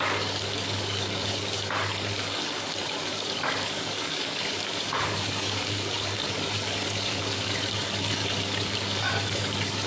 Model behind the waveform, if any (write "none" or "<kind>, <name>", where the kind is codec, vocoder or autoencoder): codec, DAC